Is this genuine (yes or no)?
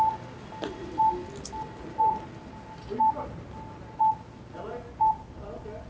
yes